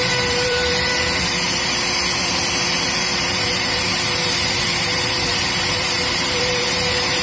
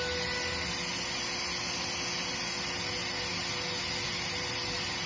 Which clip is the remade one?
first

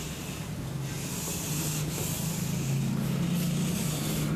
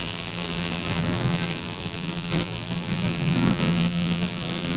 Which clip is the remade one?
second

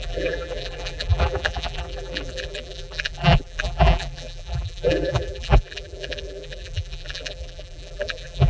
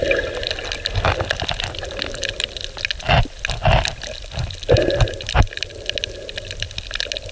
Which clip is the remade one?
first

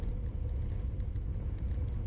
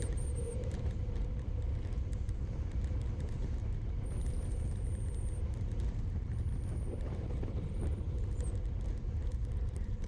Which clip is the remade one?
second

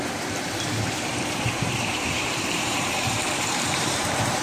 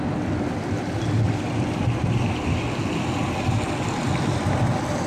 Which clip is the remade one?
first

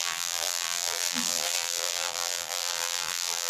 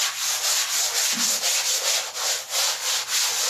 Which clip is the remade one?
first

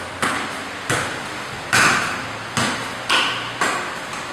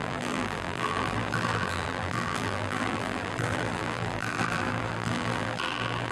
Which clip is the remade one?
second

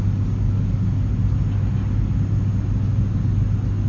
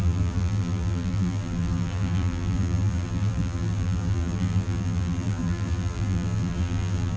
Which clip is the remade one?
second